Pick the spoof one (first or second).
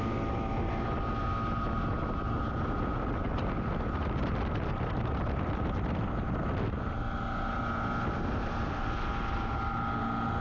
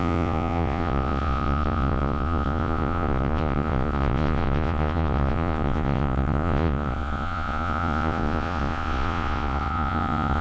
second